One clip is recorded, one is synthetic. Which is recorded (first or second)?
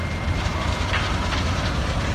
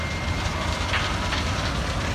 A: second